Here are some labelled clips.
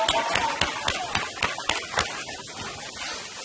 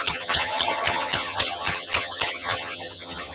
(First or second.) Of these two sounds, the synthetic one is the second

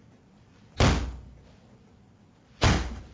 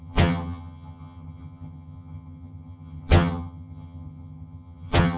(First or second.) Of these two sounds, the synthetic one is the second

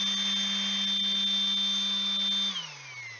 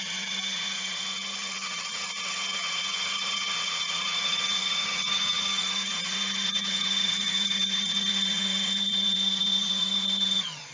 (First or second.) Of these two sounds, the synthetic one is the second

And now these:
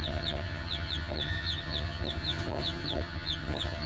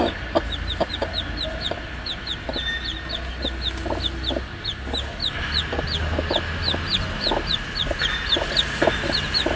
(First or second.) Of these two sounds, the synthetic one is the first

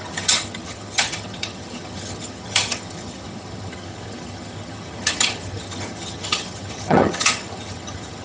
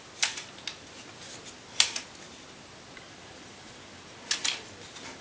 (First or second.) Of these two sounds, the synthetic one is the first